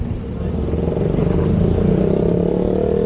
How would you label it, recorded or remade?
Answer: recorded